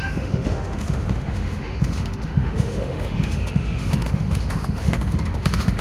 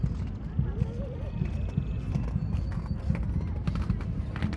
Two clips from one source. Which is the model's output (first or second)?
first